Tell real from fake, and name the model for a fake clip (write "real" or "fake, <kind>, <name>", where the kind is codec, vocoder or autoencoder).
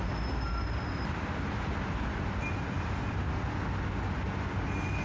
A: real